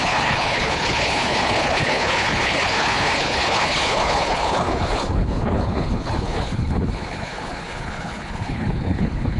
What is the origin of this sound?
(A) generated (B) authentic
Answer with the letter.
A